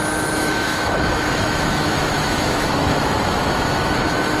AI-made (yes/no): yes